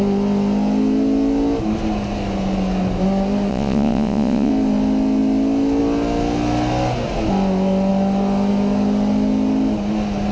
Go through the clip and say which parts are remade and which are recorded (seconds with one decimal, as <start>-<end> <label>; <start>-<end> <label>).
0.0-3.5 recorded; 3.5-4.5 remade; 4.5-10.3 recorded